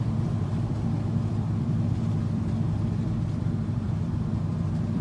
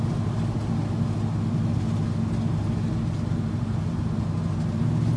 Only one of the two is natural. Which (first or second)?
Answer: second